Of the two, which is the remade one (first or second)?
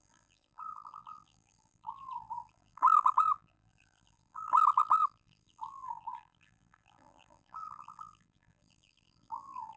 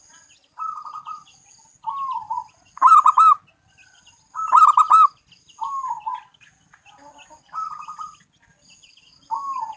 first